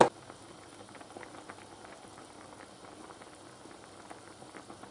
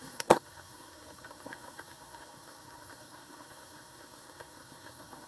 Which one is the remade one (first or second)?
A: second